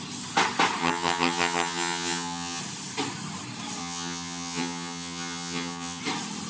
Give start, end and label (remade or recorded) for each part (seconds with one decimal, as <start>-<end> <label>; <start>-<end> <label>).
0.0-0.8 recorded; 0.8-2.6 remade; 2.6-3.8 recorded; 3.8-6.0 remade; 6.0-6.5 recorded